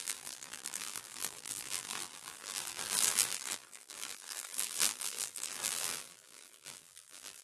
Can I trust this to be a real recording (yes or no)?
no